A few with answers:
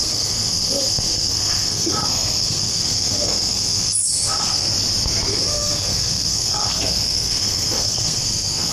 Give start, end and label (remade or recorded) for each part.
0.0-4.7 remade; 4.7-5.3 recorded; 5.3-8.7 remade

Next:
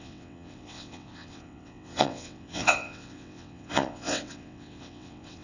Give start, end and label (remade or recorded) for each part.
0.0-5.4 remade

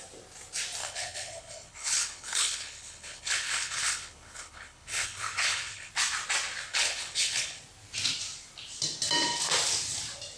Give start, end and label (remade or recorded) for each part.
0.0-0.8 recorded; 0.8-5.9 remade; 5.9-6.7 recorded; 6.7-7.6 remade; 7.6-10.4 recorded

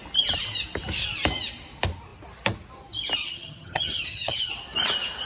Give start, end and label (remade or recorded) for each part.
0.0-3.2 recorded; 3.2-4.5 remade; 4.5-5.2 recorded